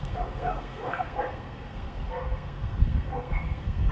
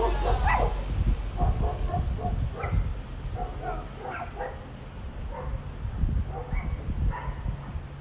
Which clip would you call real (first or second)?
second